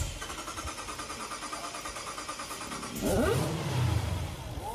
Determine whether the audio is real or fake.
real